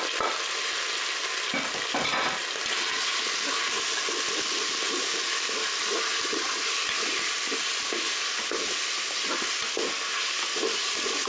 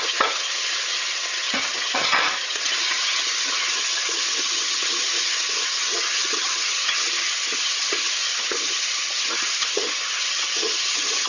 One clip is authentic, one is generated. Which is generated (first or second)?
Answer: second